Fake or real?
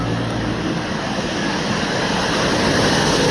real